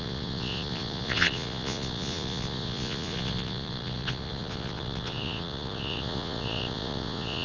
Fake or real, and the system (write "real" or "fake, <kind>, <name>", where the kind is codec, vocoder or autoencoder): fake, vocoder, Vocos